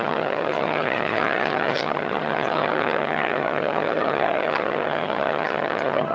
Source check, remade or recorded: remade